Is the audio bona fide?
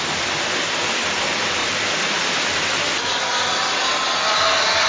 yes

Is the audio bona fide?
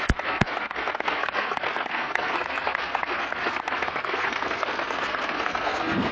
no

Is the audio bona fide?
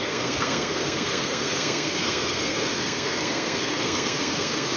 no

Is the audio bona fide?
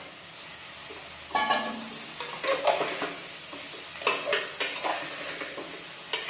yes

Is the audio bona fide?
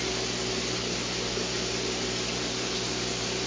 yes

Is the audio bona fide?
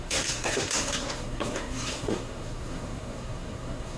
no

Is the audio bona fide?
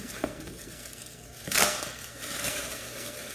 no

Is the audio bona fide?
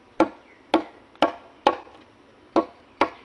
yes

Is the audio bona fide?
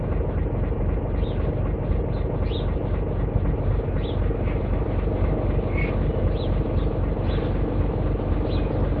yes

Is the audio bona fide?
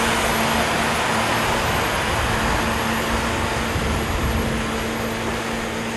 yes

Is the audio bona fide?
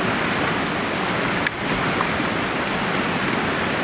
yes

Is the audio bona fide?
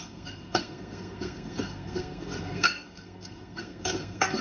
no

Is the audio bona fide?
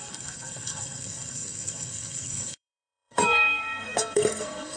no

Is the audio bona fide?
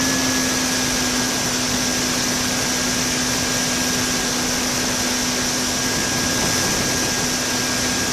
yes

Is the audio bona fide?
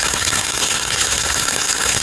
no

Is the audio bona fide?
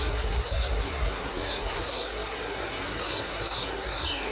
no